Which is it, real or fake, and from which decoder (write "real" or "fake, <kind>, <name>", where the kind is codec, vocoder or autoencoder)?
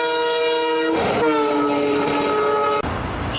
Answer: real